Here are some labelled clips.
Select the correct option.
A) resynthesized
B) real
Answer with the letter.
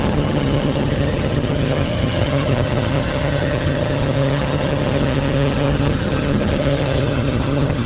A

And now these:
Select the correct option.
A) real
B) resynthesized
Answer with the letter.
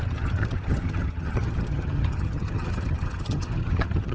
B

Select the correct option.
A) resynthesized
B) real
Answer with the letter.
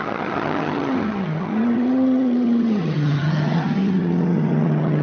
A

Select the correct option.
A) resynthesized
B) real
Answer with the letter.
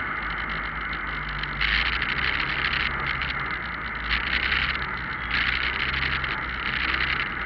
B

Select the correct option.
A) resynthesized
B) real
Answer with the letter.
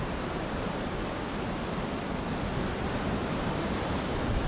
B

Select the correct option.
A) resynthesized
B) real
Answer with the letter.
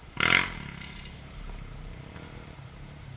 B